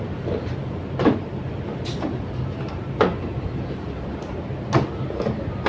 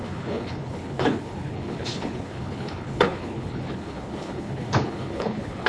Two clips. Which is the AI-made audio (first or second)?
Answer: second